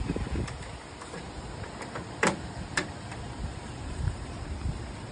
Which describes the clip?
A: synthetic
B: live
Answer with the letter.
A